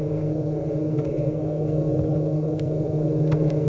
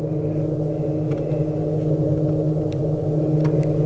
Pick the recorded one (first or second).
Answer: second